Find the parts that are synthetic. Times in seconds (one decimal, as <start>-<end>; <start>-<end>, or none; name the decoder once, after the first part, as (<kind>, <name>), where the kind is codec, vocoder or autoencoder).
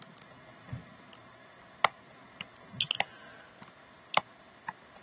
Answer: none